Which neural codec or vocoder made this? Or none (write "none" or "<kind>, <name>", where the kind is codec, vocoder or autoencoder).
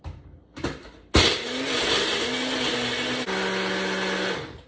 none